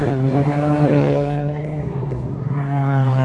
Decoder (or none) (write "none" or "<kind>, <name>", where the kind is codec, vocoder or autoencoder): codec, SNAC